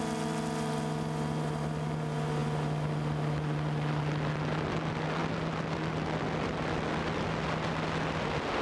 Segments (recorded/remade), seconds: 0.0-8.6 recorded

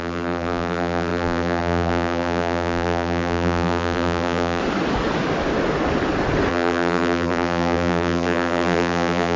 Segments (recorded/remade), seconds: 0.0-4.6 remade; 4.6-6.5 recorded; 6.5-9.4 remade

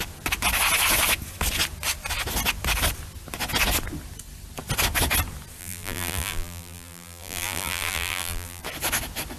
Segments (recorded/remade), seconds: 0.0-5.6 recorded; 5.6-8.6 remade; 8.6-9.4 recorded

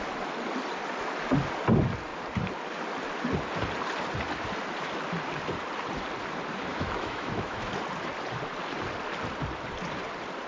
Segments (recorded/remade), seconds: 0.0-6.7 recorded; 6.7-7.7 remade; 7.7-10.5 recorded

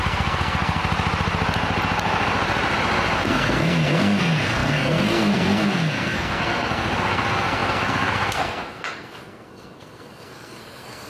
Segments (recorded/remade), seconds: 0.0-0.8 remade; 0.8-3.2 recorded; 3.2-11.1 remade